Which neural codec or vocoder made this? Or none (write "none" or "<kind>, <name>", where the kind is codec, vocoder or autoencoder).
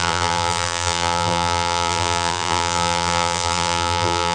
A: vocoder, BigVGAN v2